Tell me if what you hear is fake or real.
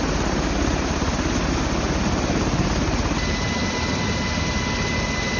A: real